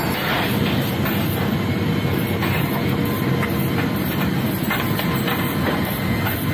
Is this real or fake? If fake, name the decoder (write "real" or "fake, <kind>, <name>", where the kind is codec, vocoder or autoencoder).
real